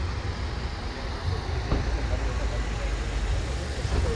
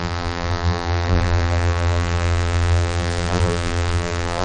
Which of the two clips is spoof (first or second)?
second